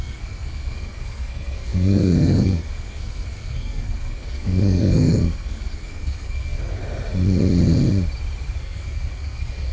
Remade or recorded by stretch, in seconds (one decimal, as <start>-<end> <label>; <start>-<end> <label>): 0.0-6.8 remade; 6.8-8.6 recorded; 8.6-9.7 remade